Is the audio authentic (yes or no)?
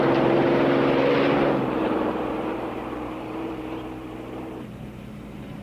no